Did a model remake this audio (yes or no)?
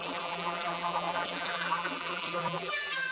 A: yes